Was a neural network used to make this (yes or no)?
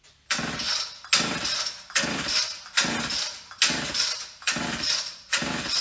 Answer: no